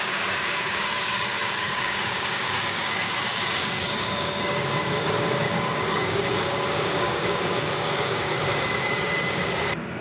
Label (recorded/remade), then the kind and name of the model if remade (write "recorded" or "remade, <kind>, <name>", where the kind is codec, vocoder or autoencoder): remade, codec, DAC